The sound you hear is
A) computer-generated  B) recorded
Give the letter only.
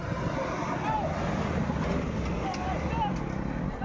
B